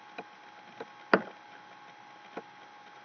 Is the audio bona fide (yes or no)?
yes